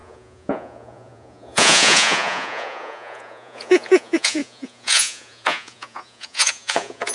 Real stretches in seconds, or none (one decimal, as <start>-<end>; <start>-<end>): none